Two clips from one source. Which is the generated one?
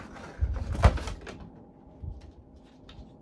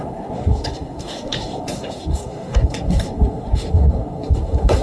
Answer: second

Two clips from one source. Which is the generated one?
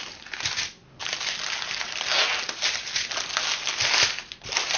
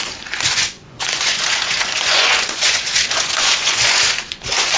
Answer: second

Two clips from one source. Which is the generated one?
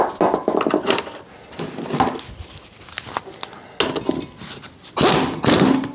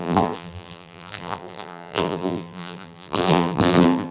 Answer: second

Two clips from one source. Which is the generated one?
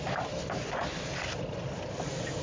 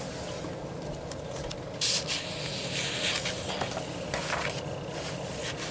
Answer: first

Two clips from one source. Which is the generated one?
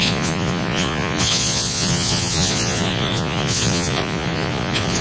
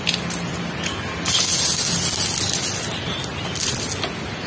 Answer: first